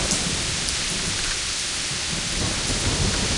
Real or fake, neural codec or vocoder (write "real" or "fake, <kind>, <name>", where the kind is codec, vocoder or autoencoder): fake, vocoder, BigVGAN v2